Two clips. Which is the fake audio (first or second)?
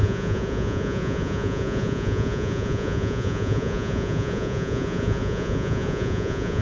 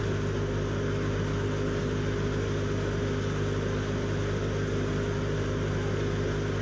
first